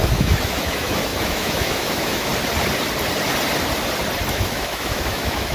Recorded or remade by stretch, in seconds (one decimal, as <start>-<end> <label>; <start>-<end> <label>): 0.0-2.3 remade; 2.3-4.3 recorded; 4.3-5.5 remade